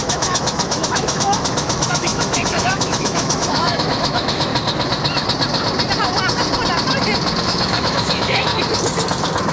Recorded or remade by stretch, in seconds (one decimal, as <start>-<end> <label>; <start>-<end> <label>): 0.0-4.5 remade; 4.5-7.4 recorded; 7.4-8.5 remade; 8.5-9.5 recorded